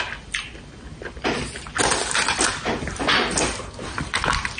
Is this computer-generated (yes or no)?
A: no